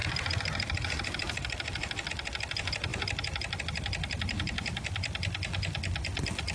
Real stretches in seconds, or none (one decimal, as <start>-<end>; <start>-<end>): 0.0-6.5